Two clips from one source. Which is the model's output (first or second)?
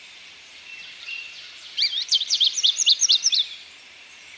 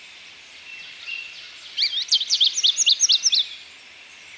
first